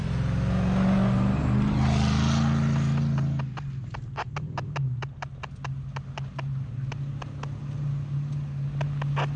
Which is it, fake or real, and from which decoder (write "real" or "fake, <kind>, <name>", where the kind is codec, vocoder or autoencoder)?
real